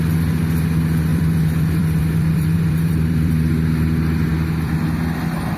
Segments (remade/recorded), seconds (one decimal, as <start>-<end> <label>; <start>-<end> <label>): 0.0-1.1 recorded; 1.1-3.5 remade; 3.5-5.6 recorded